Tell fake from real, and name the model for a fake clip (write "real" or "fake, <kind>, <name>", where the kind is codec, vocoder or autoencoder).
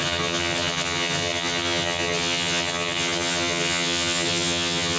fake, vocoder, HiFi-GAN